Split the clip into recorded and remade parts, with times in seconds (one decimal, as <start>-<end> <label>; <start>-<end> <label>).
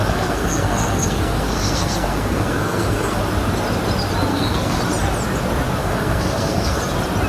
0.0-3.2 remade; 3.2-4.3 recorded; 4.3-4.8 remade; 4.8-5.8 recorded; 5.8-6.8 remade; 6.8-7.3 recorded